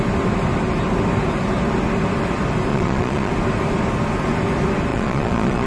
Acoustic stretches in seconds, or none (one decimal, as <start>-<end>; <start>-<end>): 0.0-2.7; 3.3-4.9